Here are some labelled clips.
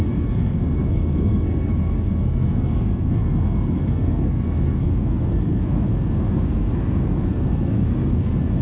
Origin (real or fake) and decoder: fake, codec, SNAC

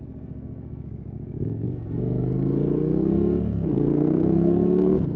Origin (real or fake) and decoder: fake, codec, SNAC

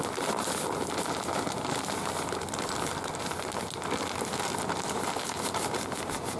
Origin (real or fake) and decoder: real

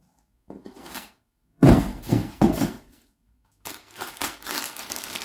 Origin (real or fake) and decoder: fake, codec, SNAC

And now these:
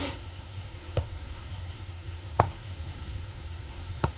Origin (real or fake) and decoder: fake, codec, SNAC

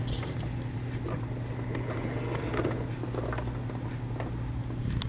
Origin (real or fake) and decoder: real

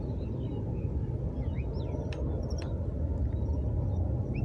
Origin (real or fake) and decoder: real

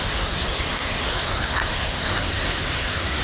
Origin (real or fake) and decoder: fake, codec, SNAC